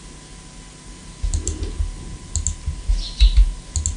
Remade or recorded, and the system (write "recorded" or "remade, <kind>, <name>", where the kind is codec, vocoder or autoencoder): recorded